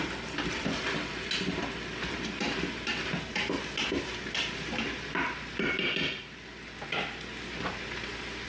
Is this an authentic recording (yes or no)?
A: yes